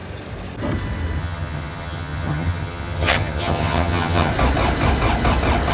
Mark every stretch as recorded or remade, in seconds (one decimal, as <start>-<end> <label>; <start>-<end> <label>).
0.0-1.2 recorded; 1.2-4.3 remade; 4.3-5.7 recorded